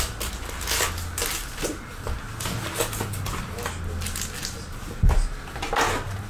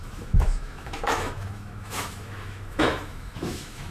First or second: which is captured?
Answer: first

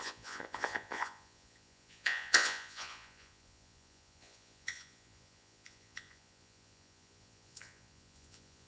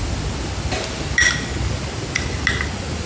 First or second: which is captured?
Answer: second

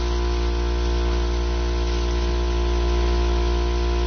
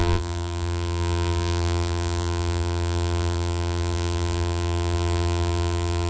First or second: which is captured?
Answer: first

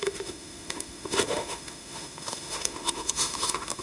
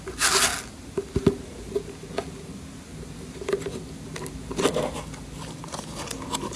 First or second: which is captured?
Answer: second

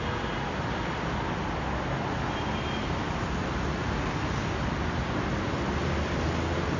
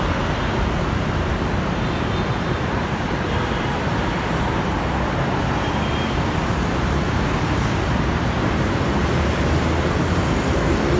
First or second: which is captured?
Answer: first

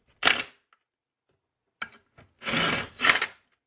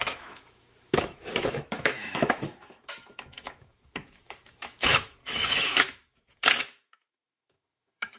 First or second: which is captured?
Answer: first